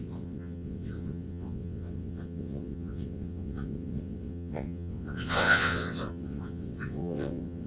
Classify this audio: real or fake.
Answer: fake